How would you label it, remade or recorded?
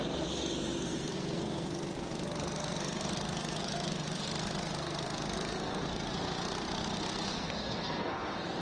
remade